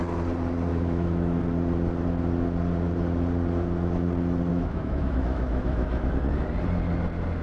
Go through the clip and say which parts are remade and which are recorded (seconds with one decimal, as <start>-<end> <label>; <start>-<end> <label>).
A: 0.0-0.7 recorded; 0.7-1.4 remade; 1.4-4.5 recorded; 4.5-6.1 remade; 6.1-7.4 recorded

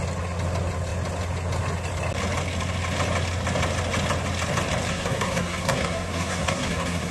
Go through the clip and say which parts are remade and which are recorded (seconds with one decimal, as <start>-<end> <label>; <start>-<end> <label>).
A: 0.0-4.9 recorded; 4.9-7.1 remade

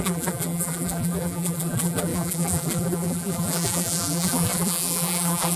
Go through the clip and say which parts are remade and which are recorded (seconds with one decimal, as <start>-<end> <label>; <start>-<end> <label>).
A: 0.0-5.6 remade

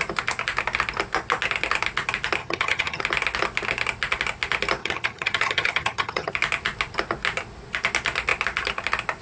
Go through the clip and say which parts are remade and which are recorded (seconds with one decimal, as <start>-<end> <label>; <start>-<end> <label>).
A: 0.0-2.4 recorded; 2.4-3.0 remade; 3.0-4.8 recorded; 4.8-6.3 remade; 6.3-9.2 recorded